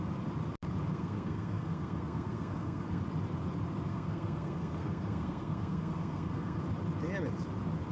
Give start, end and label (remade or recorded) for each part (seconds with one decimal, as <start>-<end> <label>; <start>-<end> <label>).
0.0-0.9 recorded; 0.9-3.0 remade; 3.0-3.9 recorded; 3.9-6.6 remade; 6.6-7.9 recorded